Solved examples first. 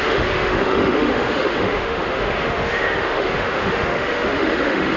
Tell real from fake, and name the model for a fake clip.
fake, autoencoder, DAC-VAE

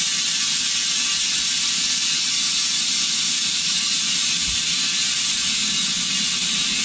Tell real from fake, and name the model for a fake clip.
fake, vocoder, BigVGAN v2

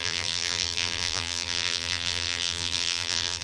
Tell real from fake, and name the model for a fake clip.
fake, vocoder, BigVGAN v2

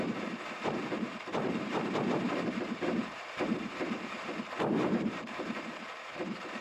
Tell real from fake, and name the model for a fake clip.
fake, vocoder, BigVGAN v2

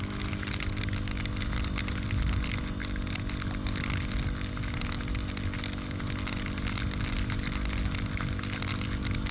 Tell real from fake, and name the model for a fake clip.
real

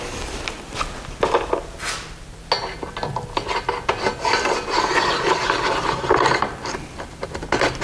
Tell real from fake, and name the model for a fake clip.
real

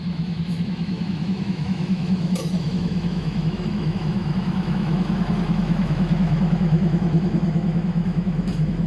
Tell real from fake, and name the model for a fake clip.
fake, autoencoder, DAC-VAE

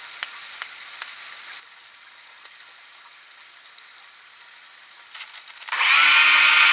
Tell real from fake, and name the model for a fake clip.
real